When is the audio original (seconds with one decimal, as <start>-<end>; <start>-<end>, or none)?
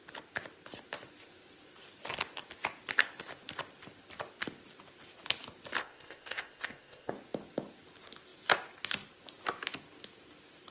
0.0-5.8; 7.1-10.7